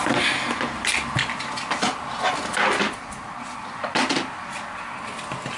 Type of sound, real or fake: real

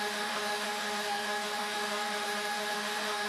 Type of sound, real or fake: fake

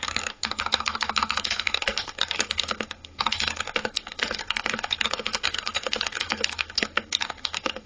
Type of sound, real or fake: fake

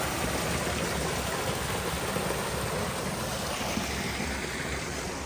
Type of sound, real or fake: real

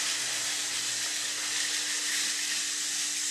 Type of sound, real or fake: real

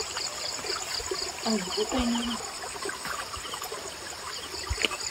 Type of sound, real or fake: real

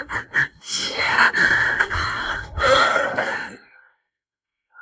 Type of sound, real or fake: fake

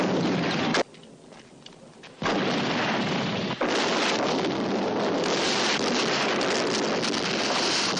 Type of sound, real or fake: real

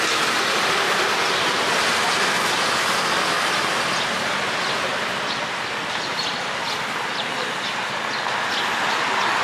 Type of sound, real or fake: real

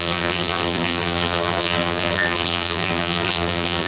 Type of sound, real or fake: fake